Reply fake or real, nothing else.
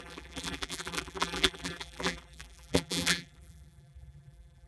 fake